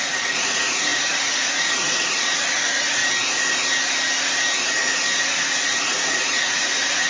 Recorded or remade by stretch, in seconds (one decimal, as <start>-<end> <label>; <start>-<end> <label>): 0.0-3.0 remade; 3.0-5.3 recorded; 5.3-7.1 remade